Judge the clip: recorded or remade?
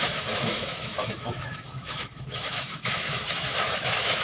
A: remade